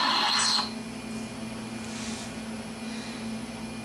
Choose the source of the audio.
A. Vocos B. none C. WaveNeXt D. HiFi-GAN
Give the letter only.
B